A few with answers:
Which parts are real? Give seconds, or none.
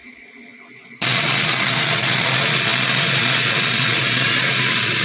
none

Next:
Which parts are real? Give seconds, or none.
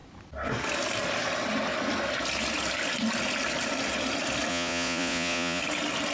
0.0-4.5; 5.6-6.1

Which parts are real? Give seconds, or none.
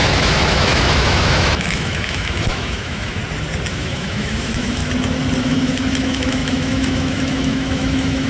3.2-3.7; 4.8-5.4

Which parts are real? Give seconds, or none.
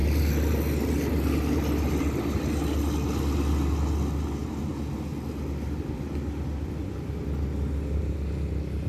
0.0-8.9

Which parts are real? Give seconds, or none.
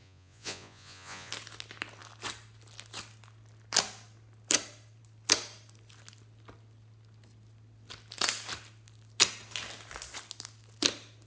1.3-11.3